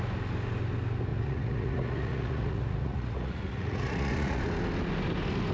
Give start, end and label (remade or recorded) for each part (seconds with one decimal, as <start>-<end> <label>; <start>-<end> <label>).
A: 0.0-1.1 recorded; 1.1-4.4 remade; 4.4-5.5 recorded